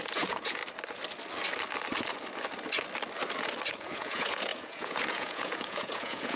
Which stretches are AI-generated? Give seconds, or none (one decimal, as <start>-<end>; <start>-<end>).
0.0-0.6; 3.7-6.4